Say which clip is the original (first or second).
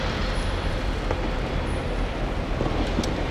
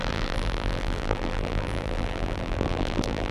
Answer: first